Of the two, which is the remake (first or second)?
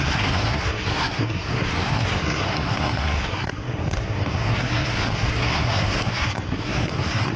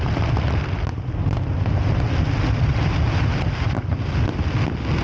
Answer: first